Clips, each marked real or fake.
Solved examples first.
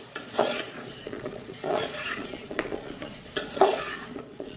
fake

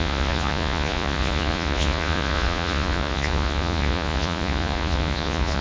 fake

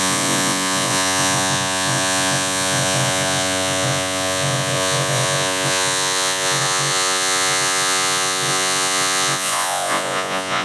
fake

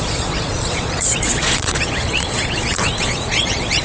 fake